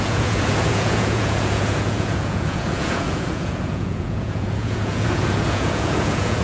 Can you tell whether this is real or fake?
fake